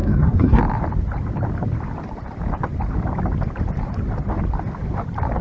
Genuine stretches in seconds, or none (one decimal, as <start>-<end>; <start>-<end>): 0.6-5.4